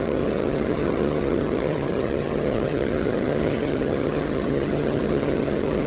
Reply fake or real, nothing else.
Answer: fake